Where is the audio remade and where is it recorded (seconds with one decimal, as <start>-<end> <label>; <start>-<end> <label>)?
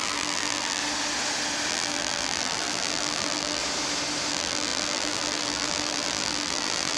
0.0-0.8 remade; 0.8-1.7 recorded; 1.7-3.6 remade; 3.6-4.3 recorded; 4.3-7.0 remade